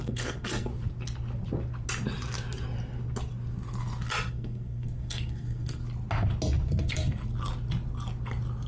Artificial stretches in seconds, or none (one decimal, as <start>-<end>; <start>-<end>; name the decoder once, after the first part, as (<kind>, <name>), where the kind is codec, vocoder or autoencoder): 0.0-0.7 (codec, SNAC); 4.3-5.8; 6.8-7.2